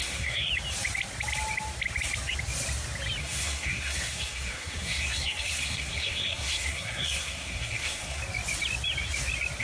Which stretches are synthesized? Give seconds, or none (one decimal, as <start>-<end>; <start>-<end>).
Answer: 0.0-0.5; 3.2-8.2